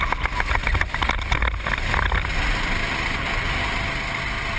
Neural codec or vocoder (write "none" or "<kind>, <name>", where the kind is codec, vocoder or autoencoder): none